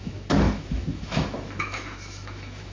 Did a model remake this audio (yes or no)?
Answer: yes